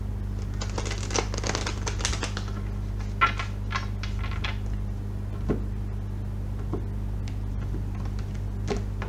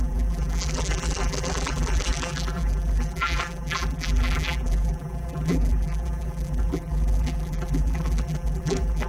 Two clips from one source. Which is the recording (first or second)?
first